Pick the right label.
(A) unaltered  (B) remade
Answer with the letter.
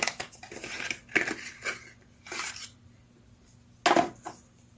A